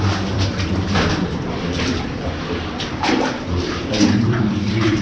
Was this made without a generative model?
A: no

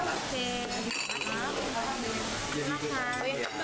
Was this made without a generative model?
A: yes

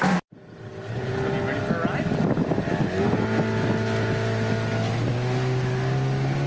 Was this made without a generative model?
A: yes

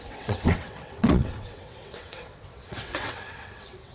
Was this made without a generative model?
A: no